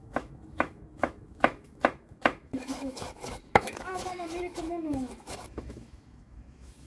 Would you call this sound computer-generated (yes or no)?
yes